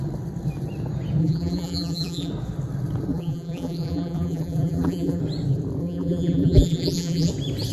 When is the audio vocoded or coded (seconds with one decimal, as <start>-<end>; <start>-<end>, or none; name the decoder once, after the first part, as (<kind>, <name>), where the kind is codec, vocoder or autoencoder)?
1.2-2.3 (vocoder, BigVGAN v2); 3.1-5.2; 5.8-7.3